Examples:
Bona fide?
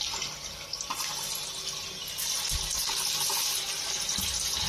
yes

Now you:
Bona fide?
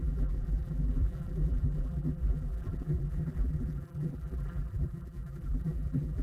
no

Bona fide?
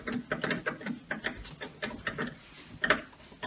yes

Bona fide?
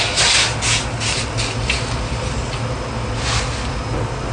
yes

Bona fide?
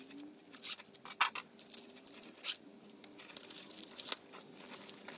yes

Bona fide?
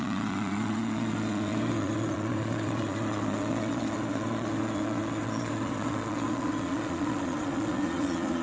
no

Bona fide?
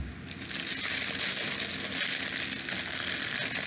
yes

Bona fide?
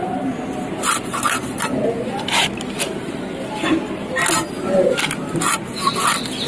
yes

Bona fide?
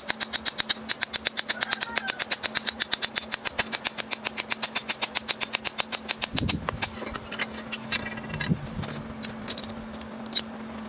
yes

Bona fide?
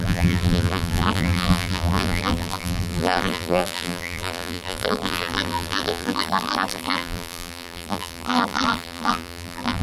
no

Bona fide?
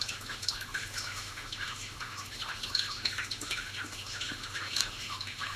no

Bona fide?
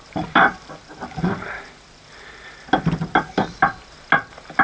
yes